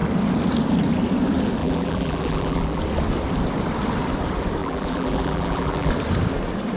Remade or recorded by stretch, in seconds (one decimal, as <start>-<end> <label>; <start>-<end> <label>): 0.0-1.6 recorded; 1.6-2.8 remade; 2.8-4.6 recorded; 4.6-5.9 remade; 5.9-6.8 recorded